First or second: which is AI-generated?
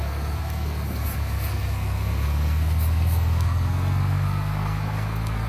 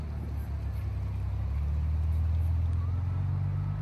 first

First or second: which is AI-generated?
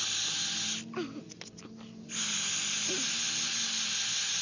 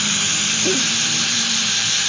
second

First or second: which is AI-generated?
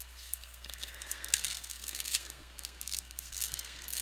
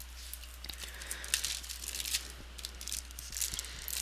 first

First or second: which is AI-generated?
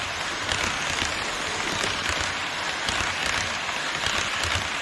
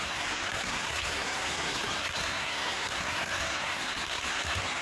second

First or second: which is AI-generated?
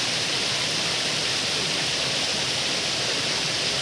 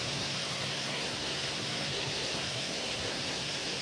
second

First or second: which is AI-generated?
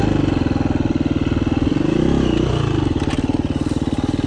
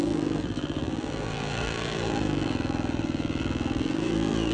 second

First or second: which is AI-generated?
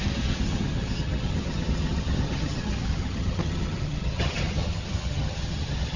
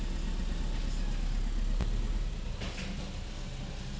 first